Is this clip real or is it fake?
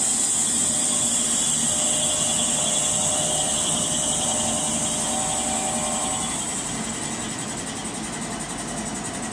real